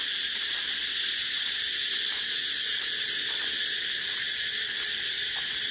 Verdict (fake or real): real